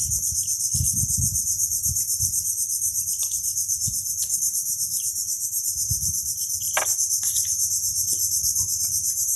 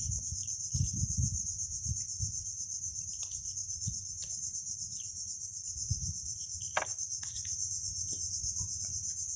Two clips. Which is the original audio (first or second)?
first